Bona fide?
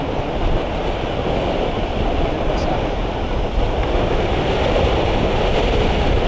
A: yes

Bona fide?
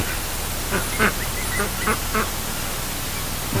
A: yes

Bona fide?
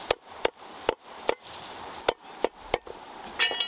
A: yes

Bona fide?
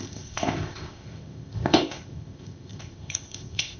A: no